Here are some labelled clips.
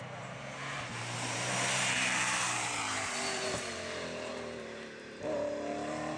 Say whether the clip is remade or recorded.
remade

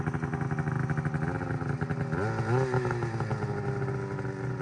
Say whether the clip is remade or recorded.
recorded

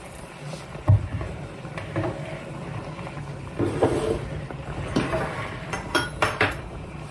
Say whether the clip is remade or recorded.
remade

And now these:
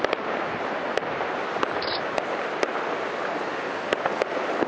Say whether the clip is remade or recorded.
recorded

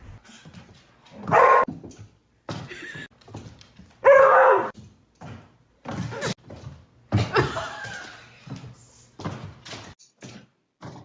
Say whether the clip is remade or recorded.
recorded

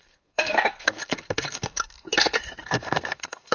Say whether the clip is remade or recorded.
remade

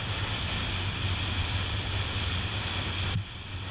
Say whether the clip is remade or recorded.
recorded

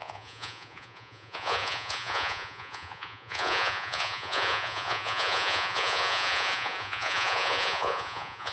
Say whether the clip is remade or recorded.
remade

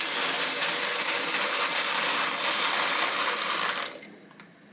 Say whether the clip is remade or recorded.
recorded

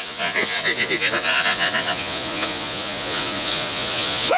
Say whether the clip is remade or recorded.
remade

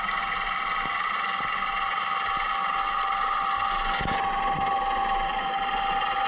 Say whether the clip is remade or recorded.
recorded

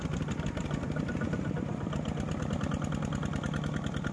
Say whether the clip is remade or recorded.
recorded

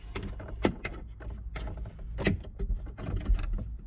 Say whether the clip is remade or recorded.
recorded